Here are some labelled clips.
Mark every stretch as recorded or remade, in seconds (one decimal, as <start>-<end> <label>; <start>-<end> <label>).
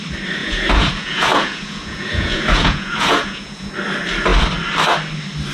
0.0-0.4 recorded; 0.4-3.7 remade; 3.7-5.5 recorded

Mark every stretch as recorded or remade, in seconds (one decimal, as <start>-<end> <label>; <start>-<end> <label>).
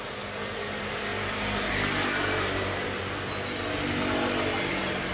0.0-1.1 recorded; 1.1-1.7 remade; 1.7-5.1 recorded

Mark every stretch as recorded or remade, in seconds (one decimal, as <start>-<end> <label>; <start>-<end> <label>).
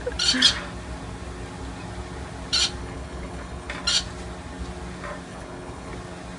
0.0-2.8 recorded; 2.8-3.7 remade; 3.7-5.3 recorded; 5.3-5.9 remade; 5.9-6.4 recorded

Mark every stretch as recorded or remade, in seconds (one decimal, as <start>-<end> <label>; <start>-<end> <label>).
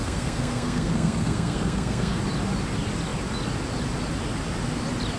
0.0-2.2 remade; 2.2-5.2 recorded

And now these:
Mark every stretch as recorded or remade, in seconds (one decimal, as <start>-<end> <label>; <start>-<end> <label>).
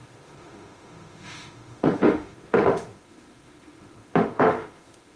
0.0-5.2 remade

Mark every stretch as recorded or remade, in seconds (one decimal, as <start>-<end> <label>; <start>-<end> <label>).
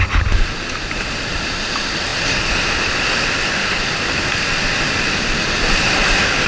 0.0-6.5 recorded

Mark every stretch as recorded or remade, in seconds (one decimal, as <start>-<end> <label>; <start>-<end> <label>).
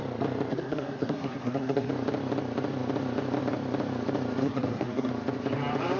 0.0-0.5 recorded; 0.5-1.9 remade; 1.9-4.4 recorded; 4.4-5.1 remade; 5.1-6.0 recorded